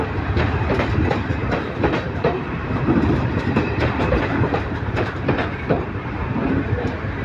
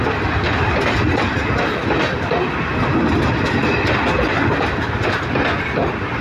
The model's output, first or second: first